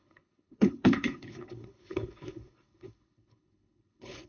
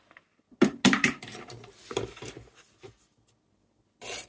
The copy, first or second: first